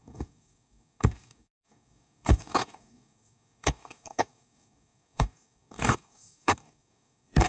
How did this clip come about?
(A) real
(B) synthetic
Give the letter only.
B